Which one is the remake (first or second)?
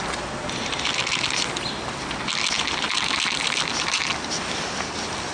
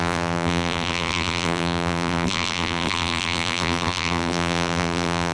second